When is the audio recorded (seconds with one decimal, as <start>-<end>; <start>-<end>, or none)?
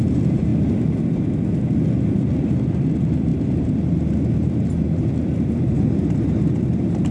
0.5-2.4